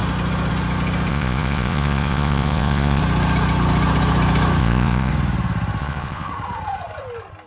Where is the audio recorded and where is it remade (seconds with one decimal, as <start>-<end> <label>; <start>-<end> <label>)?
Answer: 0.0-1.1 recorded; 1.1-3.0 remade; 3.0-4.6 recorded; 4.6-5.1 remade; 5.1-5.8 recorded; 5.8-6.3 remade; 6.3-7.5 recorded